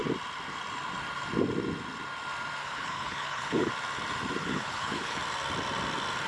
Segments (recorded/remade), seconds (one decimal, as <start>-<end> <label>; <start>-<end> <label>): 0.0-2.6 recorded; 2.6-3.7 remade; 3.7-4.4 recorded; 4.4-5.2 remade; 5.2-6.3 recorded